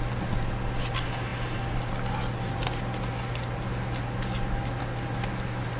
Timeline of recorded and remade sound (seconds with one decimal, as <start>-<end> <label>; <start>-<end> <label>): 0.0-5.8 recorded